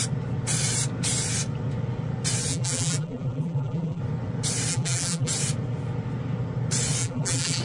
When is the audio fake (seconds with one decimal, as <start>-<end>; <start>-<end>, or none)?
2.5-4.0; 4.7-5.3; 7.0-7.6